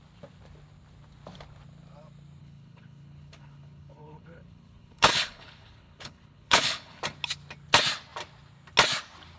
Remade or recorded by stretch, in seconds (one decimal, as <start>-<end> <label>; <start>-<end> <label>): 0.0-2.4 recorded; 2.4-7.0 remade; 7.0-9.4 recorded